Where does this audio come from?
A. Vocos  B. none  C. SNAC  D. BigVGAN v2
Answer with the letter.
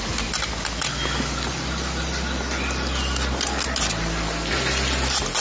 B